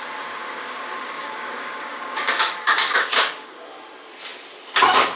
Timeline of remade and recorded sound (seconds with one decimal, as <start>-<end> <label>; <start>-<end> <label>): 0.0-0.4 recorded; 0.4-3.5 remade; 3.5-5.2 recorded